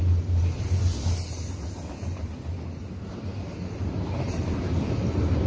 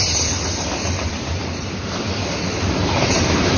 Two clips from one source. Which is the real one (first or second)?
first